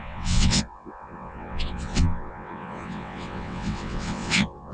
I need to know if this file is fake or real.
fake